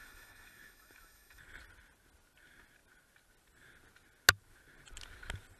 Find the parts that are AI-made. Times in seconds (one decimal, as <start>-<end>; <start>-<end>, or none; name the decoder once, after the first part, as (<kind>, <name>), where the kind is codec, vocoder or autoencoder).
0.0-1.4 (autoencoder, DAC-VAE)